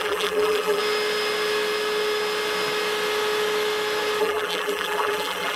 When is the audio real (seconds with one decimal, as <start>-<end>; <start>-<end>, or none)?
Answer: 0.8-4.2